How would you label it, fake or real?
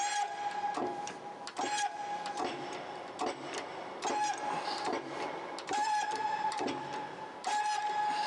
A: real